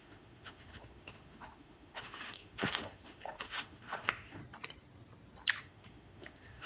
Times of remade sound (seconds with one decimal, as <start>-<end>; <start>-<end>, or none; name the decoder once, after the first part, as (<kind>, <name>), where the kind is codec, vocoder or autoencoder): 0.0-4.4 (autoencoder, DAC-VAE); 5.6-6.7